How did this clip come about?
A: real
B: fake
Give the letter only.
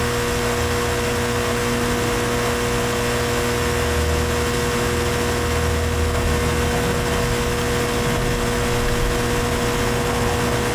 A